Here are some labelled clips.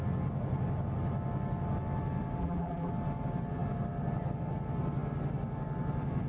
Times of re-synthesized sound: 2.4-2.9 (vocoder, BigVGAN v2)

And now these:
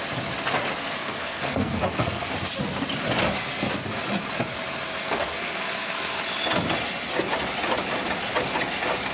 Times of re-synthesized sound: 0.8-2.3 (codec, SNAC); 5.0-6.2